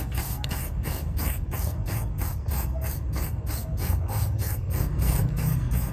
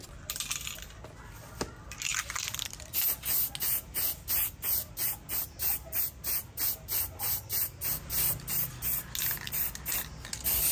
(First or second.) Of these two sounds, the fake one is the first